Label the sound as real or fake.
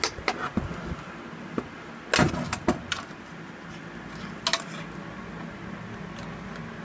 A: real